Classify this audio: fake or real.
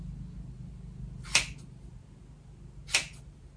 real